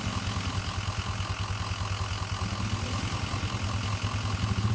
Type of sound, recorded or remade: recorded